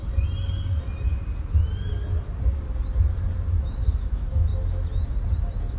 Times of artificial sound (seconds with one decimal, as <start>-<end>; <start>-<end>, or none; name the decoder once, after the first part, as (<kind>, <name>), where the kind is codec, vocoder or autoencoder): 3.5-4.5 (autoencoder, DAC-VAE)